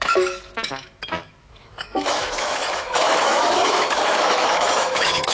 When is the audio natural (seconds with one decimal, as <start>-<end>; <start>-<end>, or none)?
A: none